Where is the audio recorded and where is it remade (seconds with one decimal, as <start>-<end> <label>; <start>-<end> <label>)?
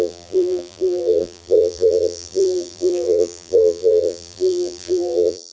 0.0-5.5 remade